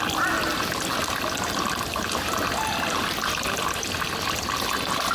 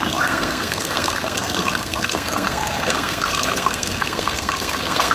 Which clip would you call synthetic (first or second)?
second